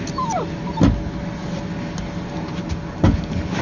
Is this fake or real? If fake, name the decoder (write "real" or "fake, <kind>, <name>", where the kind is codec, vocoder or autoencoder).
real